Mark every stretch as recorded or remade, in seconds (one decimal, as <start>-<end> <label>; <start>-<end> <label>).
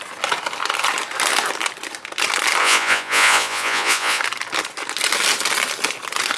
0.0-2.6 recorded; 2.6-4.2 remade; 4.2-6.4 recorded